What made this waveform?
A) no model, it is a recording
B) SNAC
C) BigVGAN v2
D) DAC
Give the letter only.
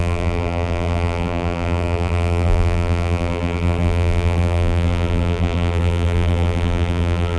C